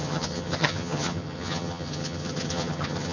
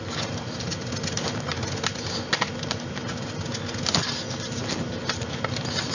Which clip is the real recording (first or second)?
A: second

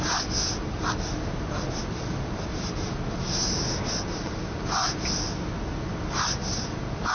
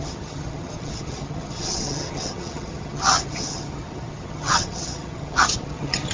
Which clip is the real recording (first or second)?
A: first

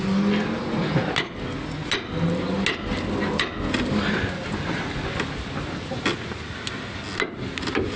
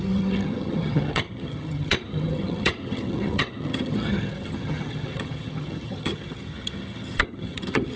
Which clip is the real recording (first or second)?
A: first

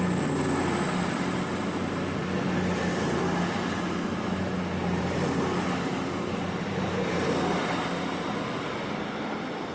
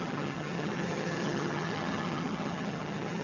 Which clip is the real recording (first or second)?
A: first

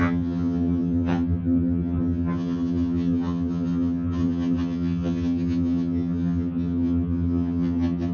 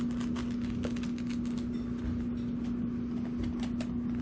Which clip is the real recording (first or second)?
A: second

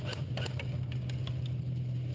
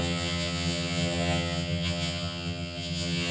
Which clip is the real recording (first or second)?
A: first